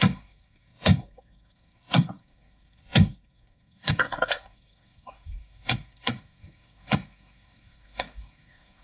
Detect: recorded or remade remade